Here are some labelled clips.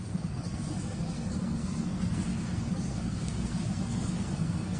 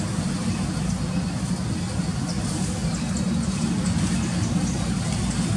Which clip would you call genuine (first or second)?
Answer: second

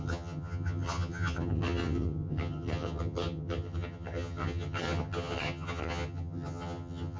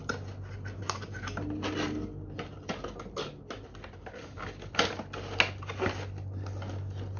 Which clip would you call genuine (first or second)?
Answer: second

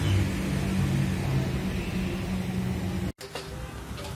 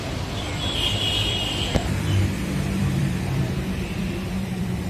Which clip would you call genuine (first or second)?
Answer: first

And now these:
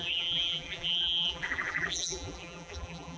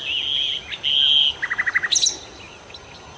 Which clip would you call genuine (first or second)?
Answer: second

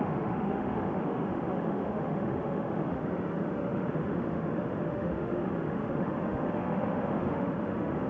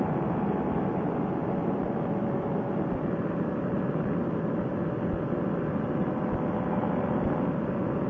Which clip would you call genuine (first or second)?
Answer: second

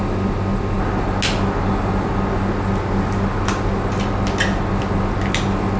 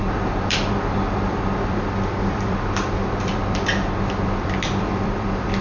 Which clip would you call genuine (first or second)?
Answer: first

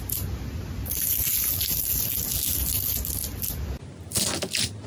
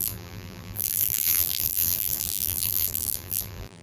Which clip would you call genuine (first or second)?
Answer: first